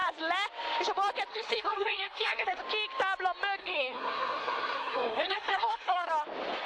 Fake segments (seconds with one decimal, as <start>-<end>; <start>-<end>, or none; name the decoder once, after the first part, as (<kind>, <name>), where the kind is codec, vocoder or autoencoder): 1.3-2.6 (codec, SNAC); 3.6-6.1